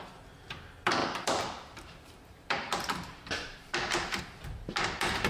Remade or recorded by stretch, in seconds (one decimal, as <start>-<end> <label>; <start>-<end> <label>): 0.0-1.0 recorded; 1.0-4.2 remade; 4.2-5.3 recorded